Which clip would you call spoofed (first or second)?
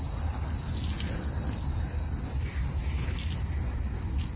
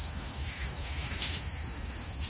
second